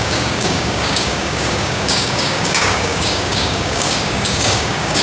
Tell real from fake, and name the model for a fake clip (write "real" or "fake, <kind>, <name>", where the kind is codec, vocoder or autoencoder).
fake, codec, DAC